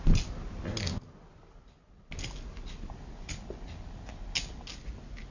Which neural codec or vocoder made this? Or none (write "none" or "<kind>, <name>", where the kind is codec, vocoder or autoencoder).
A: none